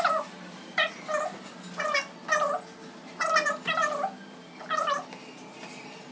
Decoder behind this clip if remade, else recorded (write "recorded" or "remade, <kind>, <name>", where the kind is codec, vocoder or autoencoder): recorded